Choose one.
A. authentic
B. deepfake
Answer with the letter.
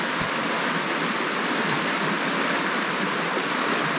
A